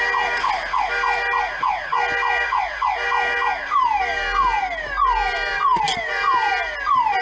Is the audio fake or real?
real